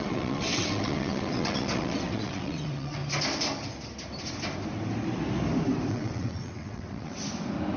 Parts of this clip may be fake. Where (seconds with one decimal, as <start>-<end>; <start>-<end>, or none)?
0.0-3.0; 5.9-7.2